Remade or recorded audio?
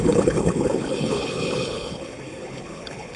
remade